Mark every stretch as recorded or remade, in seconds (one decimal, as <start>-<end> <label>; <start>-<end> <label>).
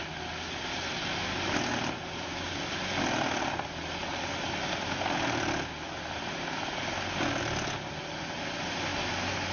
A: 0.0-9.5 recorded